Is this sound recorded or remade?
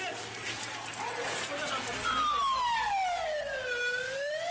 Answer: recorded